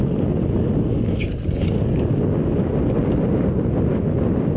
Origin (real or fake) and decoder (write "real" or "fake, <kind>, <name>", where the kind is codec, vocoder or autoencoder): real